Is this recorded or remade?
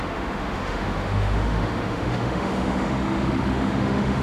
remade